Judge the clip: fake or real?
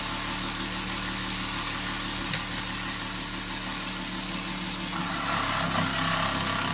real